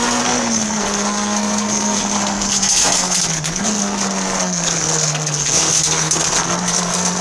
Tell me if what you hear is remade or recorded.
remade